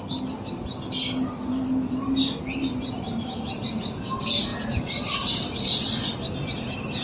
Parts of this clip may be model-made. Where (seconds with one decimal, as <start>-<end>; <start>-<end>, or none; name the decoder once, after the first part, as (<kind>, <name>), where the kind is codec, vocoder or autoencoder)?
none